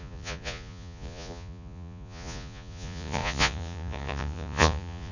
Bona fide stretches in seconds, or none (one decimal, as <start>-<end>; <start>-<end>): none